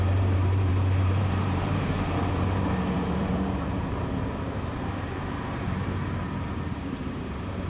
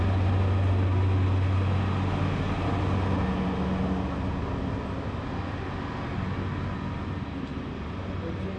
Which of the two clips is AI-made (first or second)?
first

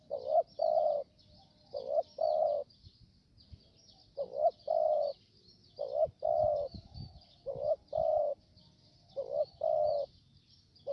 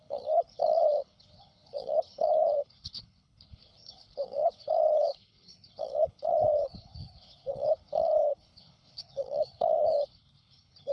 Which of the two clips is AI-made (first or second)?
second